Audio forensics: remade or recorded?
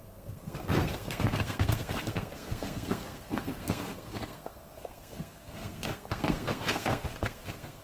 remade